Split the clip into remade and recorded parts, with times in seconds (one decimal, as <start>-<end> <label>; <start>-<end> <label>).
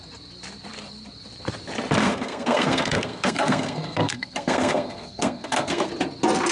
0.0-2.0 recorded; 2.0-5.9 remade; 5.9-6.5 recorded